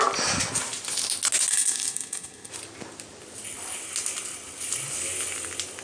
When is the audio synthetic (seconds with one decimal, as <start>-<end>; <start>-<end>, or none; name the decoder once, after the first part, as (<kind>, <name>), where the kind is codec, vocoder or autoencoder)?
1.5-2.5 (codec, SNAC)